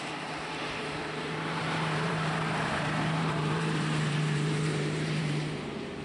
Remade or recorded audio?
remade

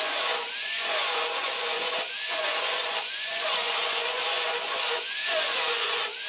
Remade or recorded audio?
remade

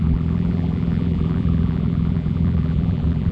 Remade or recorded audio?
remade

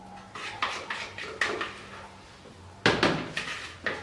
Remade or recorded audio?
recorded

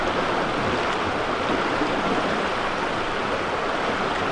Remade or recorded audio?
recorded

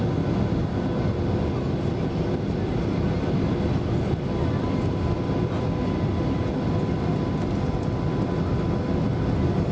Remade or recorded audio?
recorded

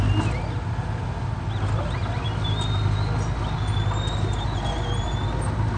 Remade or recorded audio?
recorded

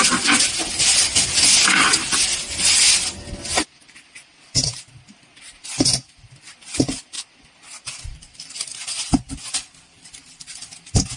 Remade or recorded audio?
recorded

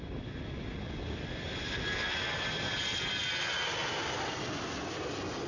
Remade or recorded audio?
recorded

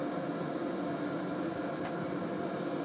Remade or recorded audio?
recorded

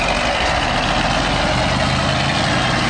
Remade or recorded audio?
recorded